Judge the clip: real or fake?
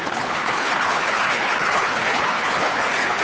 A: fake